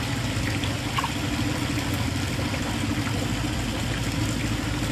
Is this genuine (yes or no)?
yes